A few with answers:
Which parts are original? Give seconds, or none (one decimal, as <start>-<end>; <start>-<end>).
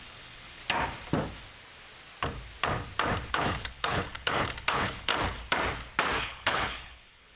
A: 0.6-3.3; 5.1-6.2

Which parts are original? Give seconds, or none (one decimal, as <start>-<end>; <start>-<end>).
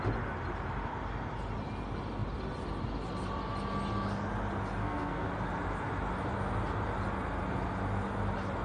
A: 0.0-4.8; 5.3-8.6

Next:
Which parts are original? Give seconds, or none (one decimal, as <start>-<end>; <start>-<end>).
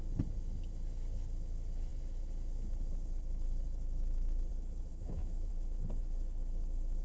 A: 0.0-4.9; 5.5-7.0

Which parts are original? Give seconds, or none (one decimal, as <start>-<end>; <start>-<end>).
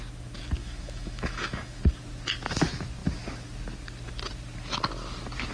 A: 0.0-0.6; 1.8-5.5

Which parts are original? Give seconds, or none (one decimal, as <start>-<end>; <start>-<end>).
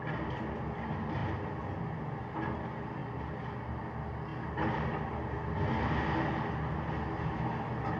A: 0.0-8.0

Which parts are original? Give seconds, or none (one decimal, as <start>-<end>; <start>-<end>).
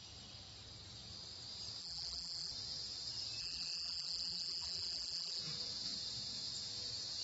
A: 0.0-1.8; 2.5-3.4; 5.4-7.2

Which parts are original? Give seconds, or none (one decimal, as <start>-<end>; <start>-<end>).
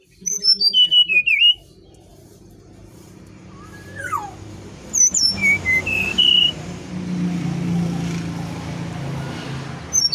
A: 0.0-2.1; 6.9-10.1